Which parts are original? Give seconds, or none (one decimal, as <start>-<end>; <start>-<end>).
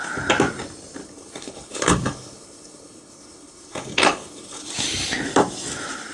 0.0-1.0; 4.7-6.1